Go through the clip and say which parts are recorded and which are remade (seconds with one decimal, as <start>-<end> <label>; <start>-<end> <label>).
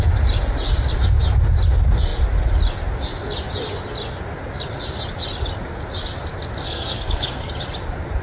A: 0.0-6.6 recorded; 6.6-7.5 remade; 7.5-8.2 recorded